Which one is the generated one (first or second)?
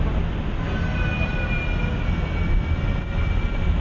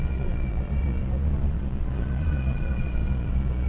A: second